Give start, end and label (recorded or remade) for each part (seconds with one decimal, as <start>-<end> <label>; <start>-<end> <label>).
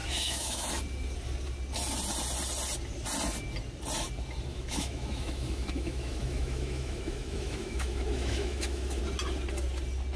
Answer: 0.0-0.7 remade; 0.7-4.5 recorded; 4.5-9.0 remade; 9.0-10.2 recorded